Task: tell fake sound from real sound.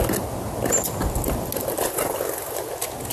real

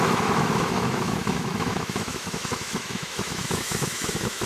fake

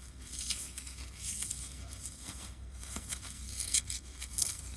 fake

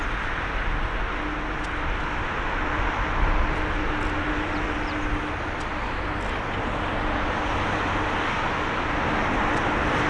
real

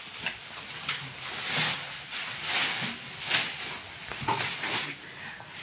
real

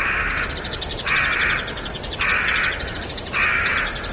real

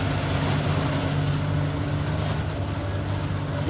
real